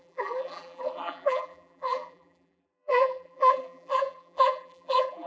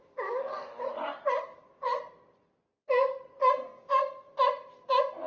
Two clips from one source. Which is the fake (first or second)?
first